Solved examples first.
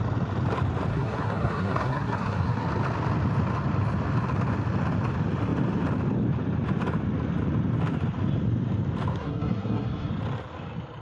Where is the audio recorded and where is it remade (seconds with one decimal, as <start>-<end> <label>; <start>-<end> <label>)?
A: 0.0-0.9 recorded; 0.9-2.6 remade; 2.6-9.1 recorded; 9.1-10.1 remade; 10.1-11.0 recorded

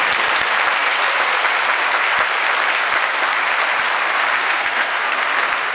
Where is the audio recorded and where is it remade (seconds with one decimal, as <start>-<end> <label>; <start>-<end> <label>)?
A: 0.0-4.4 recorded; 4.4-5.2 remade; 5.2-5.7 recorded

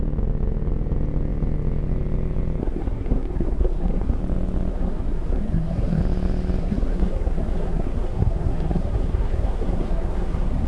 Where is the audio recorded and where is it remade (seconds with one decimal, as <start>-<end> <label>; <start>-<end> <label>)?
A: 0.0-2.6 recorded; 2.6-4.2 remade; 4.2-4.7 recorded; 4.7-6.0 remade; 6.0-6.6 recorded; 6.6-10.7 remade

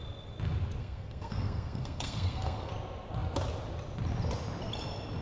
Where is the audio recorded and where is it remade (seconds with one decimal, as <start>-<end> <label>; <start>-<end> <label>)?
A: 0.0-0.8 recorded; 0.8-2.7 remade; 2.7-5.2 recorded

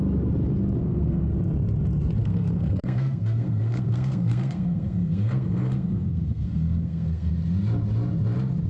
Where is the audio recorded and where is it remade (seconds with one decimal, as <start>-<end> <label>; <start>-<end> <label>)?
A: 0.0-0.8 recorded; 0.8-1.3 remade; 1.3-2.2 recorded; 2.2-7.3 remade; 7.3-8.7 recorded